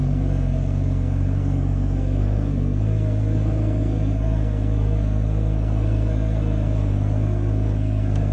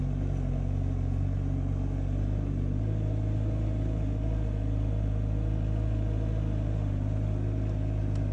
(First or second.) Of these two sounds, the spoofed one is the first